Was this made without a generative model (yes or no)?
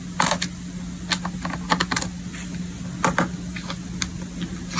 yes